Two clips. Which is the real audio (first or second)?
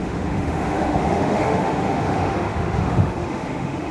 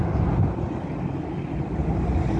second